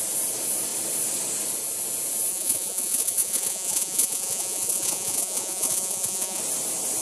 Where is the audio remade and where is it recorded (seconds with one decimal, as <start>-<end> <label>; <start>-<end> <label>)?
0.0-2.3 recorded; 2.3-6.4 remade; 6.4-7.0 recorded